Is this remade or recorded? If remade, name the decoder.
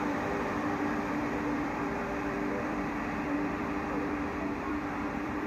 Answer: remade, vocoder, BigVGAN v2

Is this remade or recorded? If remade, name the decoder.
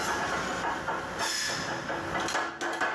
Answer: recorded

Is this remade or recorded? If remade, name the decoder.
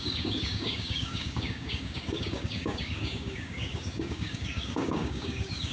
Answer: remade, codec, DAC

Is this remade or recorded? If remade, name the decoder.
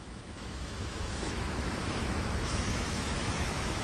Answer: remade, autoencoder, DAC-VAE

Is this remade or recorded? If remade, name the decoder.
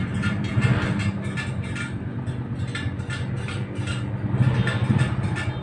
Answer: recorded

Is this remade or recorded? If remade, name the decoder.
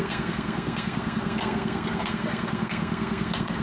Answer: remade, codec, SNAC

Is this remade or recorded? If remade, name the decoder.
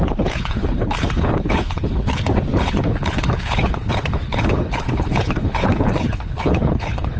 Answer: remade, codec, HILCodec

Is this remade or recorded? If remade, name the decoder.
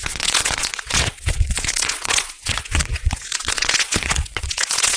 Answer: remade, vocoder, WaveNeXt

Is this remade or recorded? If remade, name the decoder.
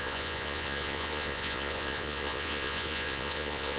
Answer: remade, vocoder, Vocos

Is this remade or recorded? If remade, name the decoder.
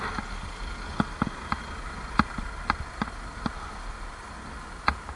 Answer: recorded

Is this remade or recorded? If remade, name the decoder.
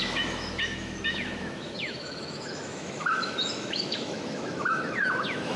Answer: remade, autoencoder, DAC-VAE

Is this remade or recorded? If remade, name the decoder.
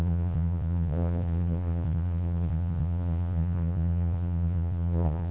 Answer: remade, vocoder, Vocos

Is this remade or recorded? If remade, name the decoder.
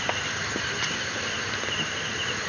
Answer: recorded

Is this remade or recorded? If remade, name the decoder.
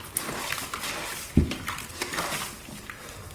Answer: remade, vocoder, BigVGAN v2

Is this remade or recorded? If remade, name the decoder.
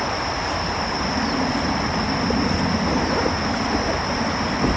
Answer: recorded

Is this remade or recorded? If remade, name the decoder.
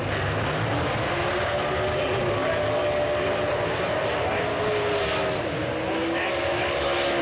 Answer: recorded